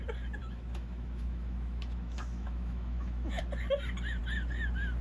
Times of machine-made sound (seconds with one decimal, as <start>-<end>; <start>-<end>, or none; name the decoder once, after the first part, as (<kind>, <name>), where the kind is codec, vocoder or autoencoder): 0.4-3.4 (autoencoder, DAC-VAE)